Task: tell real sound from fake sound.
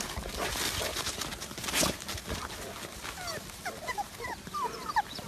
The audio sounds real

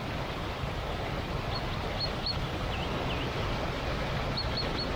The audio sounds real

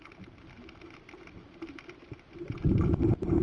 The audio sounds fake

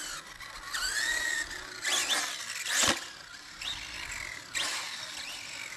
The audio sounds real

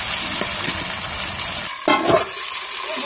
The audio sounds real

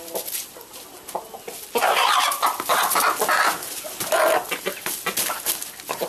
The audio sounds real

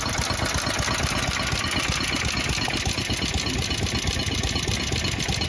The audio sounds real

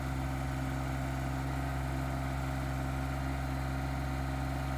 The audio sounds real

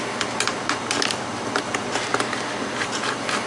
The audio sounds real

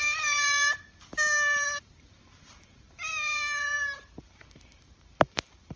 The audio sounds fake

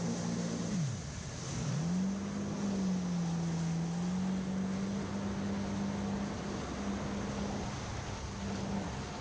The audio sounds real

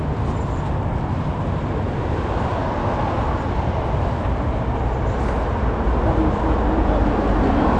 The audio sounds real